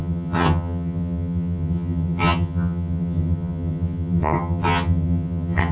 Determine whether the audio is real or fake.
fake